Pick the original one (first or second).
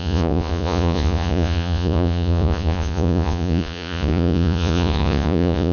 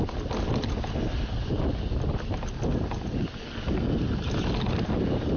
second